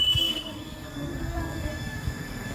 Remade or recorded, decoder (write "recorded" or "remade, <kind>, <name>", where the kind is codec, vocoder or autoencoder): remade, codec, SNAC